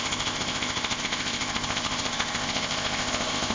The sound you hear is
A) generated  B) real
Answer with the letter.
A